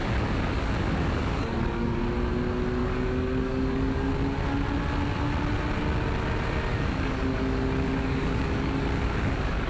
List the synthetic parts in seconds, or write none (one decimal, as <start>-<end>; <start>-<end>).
0.0-2.0; 2.8-4.1; 6.7-9.7